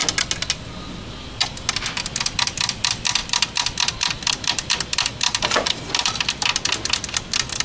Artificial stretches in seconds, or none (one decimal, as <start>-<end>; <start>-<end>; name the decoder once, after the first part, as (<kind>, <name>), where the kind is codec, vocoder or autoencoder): 1.7-7.6 (vocoder, BigVGAN v2)